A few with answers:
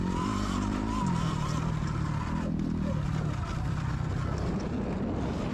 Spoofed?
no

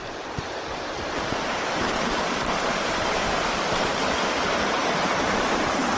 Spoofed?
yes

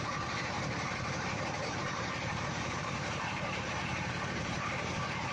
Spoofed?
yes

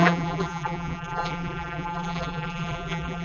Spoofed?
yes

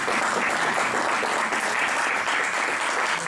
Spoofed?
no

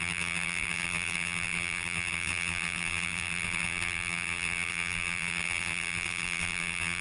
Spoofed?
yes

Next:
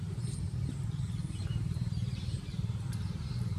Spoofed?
yes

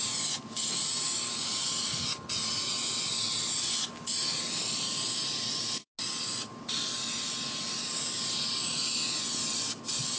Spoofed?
no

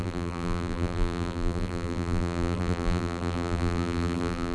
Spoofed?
yes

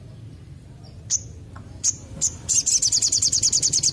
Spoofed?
yes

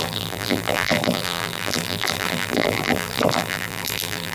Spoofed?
yes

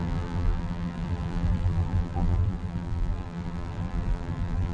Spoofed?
yes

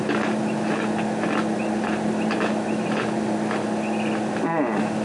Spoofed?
no